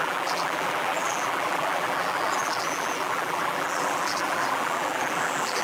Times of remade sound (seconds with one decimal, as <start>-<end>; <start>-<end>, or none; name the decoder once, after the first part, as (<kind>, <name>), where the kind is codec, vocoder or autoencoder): 0.0-5.6 (vocoder, BigVGAN v2)